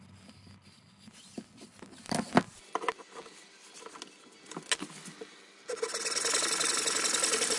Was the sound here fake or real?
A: real